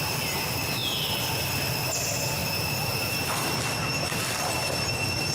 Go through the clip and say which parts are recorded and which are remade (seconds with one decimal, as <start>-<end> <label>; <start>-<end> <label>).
0.0-2.4 recorded; 2.4-3.6 remade; 3.6-5.3 recorded